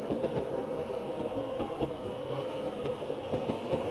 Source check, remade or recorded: remade